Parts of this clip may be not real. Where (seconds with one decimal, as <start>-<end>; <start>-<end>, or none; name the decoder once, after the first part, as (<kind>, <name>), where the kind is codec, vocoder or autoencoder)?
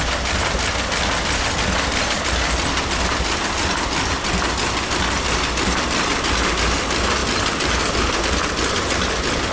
none